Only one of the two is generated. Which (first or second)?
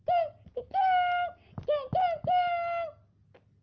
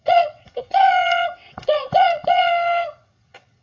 second